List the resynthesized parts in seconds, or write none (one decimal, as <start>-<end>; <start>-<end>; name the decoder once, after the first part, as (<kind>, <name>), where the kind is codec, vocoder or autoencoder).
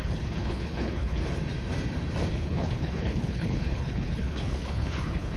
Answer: 0.0-1.2 (codec, HILCodec); 2.3-5.4